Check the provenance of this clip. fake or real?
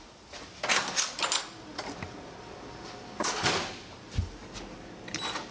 real